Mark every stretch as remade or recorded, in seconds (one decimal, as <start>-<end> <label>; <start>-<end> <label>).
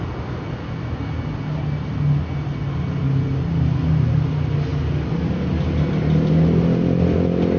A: 0.0-7.6 recorded